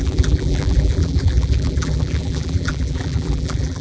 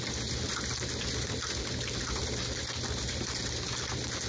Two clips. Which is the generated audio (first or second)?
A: first